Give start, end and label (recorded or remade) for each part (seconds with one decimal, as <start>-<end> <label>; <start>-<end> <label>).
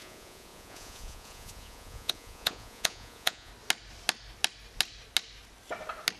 0.0-3.5 remade; 3.5-6.2 recorded